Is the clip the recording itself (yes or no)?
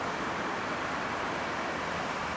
yes